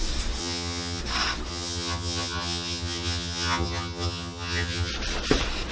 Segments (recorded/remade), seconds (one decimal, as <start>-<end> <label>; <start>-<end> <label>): 0.0-0.4 recorded; 0.4-1.0 remade; 1.0-1.5 recorded; 1.5-4.9 remade; 4.9-5.7 recorded